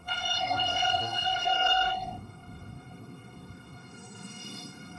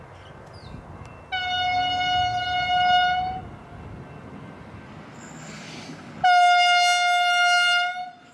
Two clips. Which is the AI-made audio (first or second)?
first